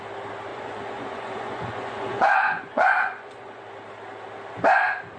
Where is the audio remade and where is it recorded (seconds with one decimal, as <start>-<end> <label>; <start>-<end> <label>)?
0.0-0.5 recorded; 0.5-3.6 remade; 3.6-5.2 recorded

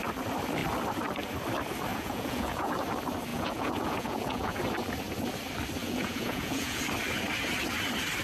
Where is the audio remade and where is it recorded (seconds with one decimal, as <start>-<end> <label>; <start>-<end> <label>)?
0.0-1.9 recorded; 1.9-2.7 remade; 2.7-3.3 recorded; 3.3-4.6 remade; 4.6-5.8 recorded; 5.8-6.8 remade; 6.8-8.2 recorded

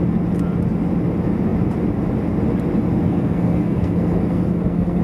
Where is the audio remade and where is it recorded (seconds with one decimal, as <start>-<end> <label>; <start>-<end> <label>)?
0.0-3.0 recorded; 3.0-5.0 remade

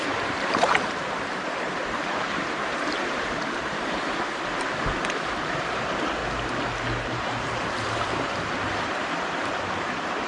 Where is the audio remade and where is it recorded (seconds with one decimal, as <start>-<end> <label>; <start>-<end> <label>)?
0.0-6.2 remade; 6.2-7.1 recorded; 7.1-9.0 remade; 9.0-9.8 recorded; 9.8-10.3 remade

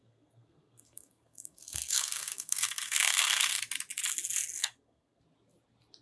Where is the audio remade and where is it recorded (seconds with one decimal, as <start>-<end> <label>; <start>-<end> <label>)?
0.0-3.6 remade; 3.6-4.6 recorded; 4.6-5.2 remade; 5.2-6.0 recorded